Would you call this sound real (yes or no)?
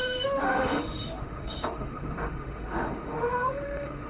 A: no